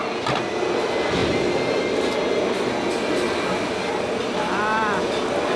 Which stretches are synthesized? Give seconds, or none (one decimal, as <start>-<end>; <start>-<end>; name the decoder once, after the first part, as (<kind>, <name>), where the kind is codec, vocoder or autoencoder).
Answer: none

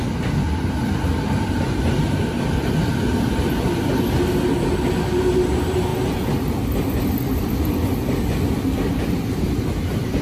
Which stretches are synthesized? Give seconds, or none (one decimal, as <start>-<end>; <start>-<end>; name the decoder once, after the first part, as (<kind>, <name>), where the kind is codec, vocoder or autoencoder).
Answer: none

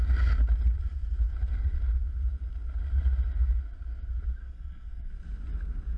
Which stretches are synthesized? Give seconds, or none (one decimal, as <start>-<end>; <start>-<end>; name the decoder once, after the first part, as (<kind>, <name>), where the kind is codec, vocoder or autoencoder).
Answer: 4.4-5.1 (codec, SNAC)

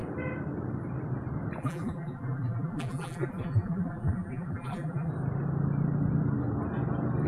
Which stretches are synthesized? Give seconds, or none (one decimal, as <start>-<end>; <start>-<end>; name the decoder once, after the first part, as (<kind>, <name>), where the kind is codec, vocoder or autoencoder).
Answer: 1.6-5.1 (vocoder, BigVGAN v2)

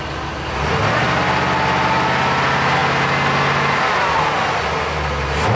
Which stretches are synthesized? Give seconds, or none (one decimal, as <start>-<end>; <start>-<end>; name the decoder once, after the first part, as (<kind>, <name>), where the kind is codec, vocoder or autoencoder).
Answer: none